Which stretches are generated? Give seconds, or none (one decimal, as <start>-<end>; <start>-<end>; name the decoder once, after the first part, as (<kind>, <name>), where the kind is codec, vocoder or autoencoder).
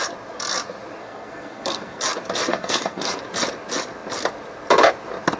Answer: 1.0-2.0 (codec, SNAC); 2.5-3.2